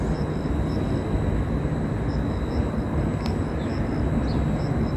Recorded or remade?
recorded